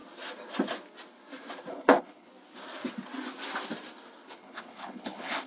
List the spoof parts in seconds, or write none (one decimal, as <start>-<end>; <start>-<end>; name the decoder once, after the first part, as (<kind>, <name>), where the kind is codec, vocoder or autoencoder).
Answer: 1.7-2.3 (codec, HILCodec); 4.3-5.5